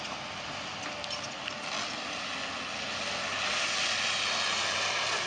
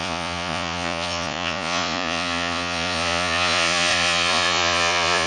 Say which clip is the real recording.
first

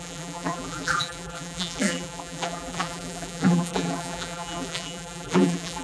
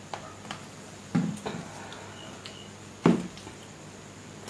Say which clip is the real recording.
second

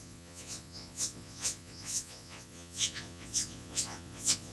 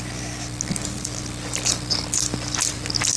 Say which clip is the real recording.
second